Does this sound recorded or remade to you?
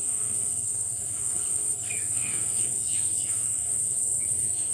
remade